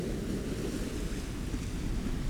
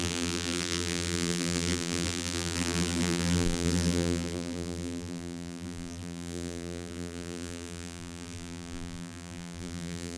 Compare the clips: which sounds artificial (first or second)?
second